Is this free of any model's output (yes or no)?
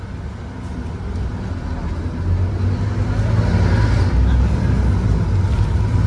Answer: yes